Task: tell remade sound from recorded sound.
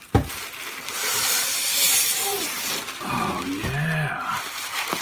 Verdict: recorded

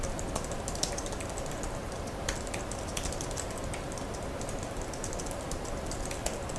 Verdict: recorded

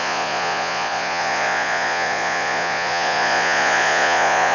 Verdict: remade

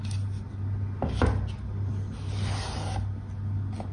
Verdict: recorded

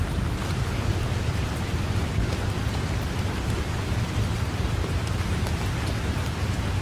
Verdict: recorded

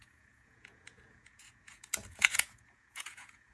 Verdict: remade